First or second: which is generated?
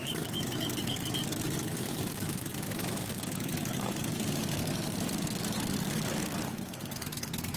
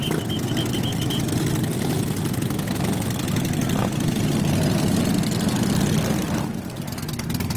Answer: first